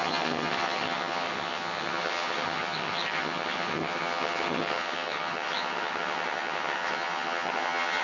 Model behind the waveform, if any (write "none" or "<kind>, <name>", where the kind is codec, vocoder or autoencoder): vocoder, HiFi-GAN